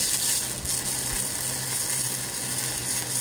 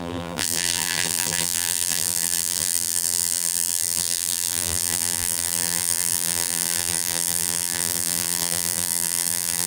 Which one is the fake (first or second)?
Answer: second